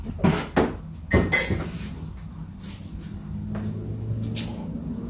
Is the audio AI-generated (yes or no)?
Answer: no